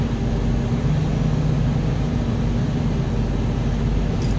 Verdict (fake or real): real